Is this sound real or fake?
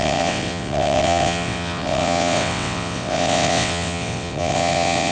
fake